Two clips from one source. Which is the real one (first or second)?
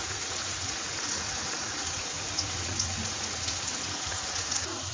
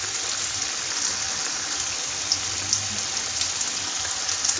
second